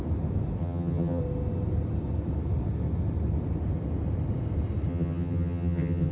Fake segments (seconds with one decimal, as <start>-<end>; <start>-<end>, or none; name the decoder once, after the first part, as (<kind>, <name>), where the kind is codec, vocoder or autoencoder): 0.6-1.2 (vocoder, HiFi-GAN); 4.9-6.1